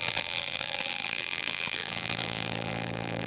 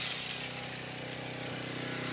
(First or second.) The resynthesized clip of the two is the first